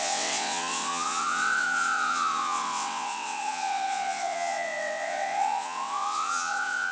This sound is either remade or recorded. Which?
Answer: remade